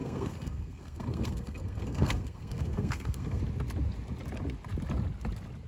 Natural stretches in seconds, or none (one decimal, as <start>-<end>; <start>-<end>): 3.4-5.7